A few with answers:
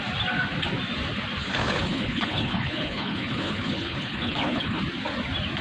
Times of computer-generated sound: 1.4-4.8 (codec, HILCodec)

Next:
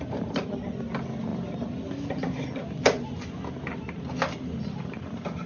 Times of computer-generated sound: none

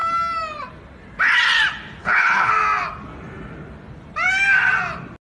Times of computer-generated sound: 2.0-2.5 (codec, HILCodec)

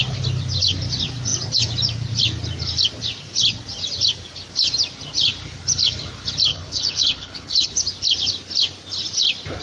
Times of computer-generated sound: 6.5-7.7 (codec, HILCodec)

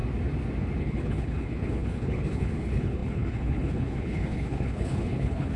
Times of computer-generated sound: 0.8-5.6 (codec, HILCodec)